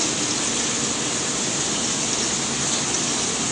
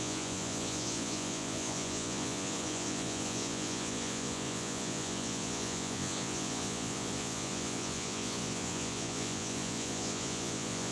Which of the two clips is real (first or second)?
first